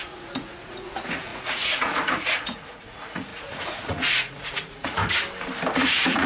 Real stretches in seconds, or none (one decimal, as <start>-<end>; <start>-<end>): 5.0-5.7